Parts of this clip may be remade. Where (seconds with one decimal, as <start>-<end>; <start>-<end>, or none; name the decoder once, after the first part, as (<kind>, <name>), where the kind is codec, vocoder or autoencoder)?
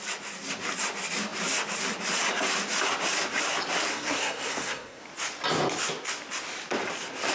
3.9-5.0 (codec, SNAC)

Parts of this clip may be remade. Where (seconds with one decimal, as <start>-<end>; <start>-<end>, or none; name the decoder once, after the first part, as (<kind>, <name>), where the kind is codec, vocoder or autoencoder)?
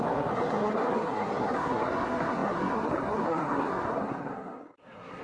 0.0-5.2 (codec, SNAC)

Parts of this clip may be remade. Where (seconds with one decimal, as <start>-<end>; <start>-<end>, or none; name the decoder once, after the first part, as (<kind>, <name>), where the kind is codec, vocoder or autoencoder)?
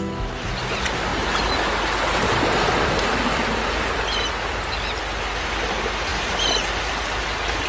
6.1-7.7 (vocoder, BigVGAN v2)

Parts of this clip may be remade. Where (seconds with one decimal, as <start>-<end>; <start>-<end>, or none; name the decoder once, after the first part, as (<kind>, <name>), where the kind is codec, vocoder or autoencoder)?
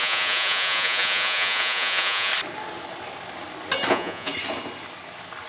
0.0-2.3 (vocoder, Vocos); 3.9-4.3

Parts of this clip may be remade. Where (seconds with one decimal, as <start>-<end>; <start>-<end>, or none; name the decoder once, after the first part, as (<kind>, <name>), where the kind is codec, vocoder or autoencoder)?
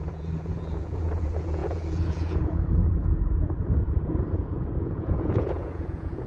0.0-6.3 (vocoder, Vocos)